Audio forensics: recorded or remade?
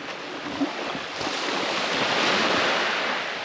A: recorded